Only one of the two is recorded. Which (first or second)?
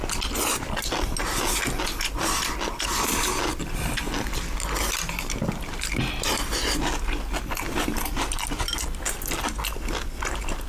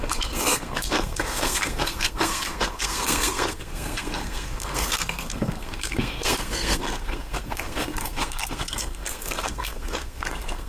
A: first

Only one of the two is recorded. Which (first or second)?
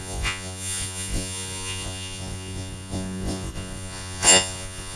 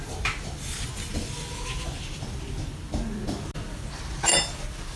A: second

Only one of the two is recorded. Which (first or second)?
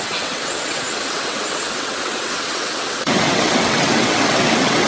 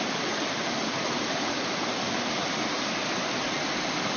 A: second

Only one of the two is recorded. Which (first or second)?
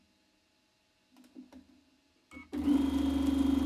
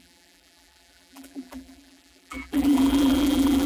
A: first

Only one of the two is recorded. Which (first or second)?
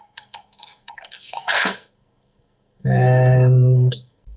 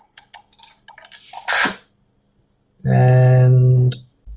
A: second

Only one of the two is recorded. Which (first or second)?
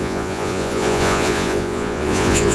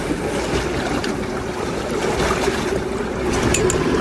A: second